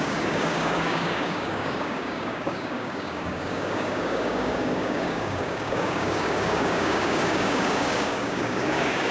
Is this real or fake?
fake